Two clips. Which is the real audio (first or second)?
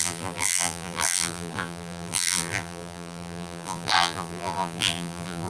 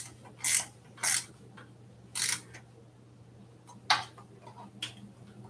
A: second